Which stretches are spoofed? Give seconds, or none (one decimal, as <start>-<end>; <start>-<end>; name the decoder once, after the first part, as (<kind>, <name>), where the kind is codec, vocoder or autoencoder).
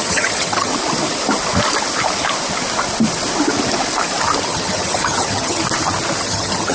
0.0-0.7 (vocoder, HiFi-GAN); 4.4-5.6; 6.2-6.7